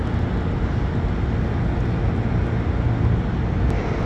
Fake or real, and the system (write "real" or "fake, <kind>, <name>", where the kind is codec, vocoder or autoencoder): real